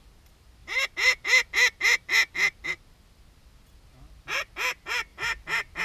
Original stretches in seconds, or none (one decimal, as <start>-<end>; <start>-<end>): 0.0-5.8

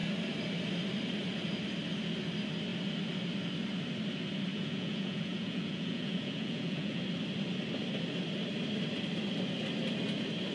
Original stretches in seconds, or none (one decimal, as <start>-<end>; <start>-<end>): 0.0-4.5; 7.0-10.5

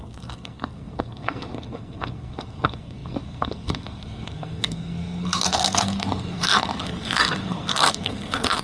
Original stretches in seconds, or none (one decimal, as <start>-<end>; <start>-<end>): none

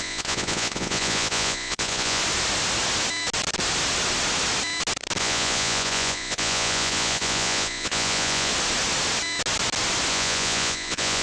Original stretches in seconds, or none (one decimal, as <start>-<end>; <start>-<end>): 2.2-5.2; 8.5-10.1

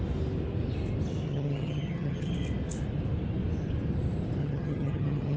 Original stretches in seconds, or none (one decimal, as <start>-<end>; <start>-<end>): 0.0-1.3; 2.3-4.4

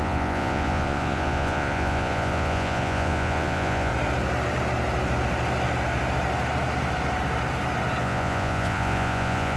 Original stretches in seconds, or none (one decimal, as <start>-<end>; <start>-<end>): 3.9-8.0